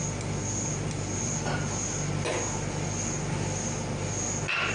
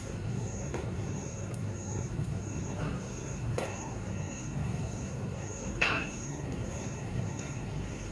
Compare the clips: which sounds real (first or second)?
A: first